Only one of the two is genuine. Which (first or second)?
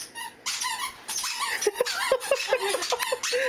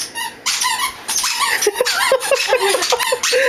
first